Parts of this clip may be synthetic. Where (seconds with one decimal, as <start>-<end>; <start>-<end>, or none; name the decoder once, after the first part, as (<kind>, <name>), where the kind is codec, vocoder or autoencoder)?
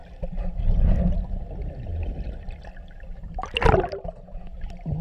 none